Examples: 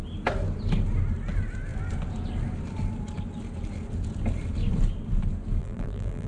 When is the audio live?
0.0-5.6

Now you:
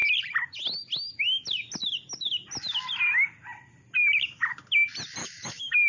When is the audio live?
0.0-5.2

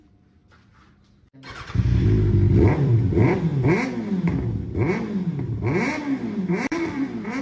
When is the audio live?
0.4-2.7; 3.5-6.2

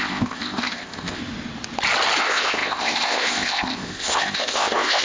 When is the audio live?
1.2-2.2

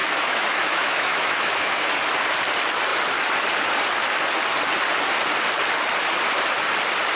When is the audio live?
1.9-7.2

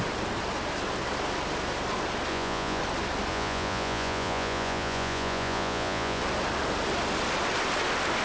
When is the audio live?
0.0-2.3; 2.8-3.3; 6.2-8.2

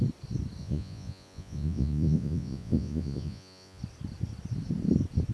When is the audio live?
0.0-0.6; 3.8-5.3